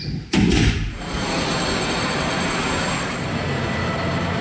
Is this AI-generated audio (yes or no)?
no